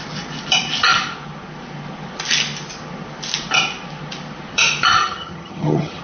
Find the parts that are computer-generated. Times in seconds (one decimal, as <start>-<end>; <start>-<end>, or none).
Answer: 5.0-6.0